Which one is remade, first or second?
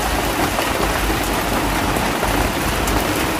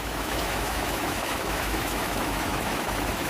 second